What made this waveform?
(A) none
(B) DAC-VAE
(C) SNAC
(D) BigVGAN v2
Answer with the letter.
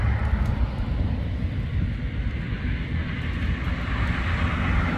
A